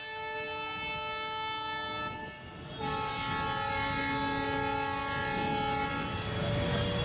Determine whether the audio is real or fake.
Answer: real